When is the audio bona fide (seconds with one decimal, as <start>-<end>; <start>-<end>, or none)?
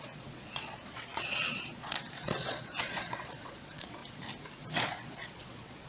4.0-4.6